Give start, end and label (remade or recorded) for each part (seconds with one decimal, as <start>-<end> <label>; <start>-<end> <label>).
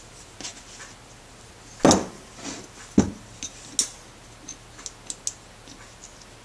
0.0-6.4 recorded